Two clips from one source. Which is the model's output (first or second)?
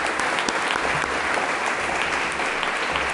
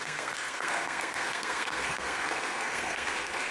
second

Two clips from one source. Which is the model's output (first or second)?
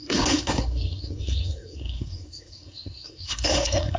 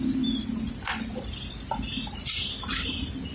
first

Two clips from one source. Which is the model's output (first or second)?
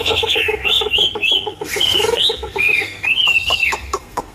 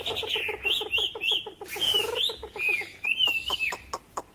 first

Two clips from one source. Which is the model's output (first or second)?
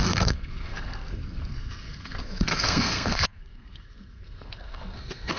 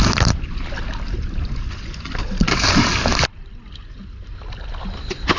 first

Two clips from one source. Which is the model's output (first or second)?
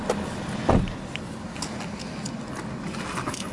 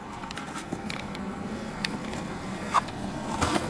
second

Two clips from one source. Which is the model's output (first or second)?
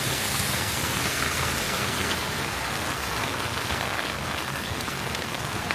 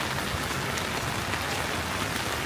first